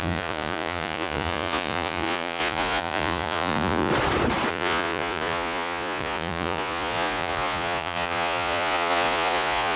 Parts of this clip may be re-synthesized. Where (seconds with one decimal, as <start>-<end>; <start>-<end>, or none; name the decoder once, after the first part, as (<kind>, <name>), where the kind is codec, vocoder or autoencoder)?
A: 0.0-3.9 (vocoder, Vocos); 4.5-9.8